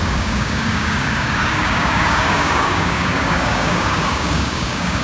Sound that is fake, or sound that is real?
fake